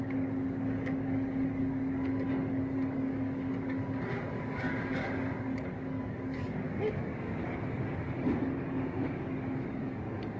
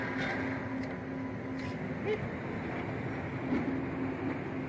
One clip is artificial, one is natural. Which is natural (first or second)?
second